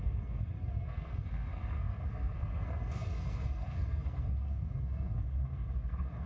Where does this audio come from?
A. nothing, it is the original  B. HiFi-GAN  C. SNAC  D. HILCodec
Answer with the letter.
C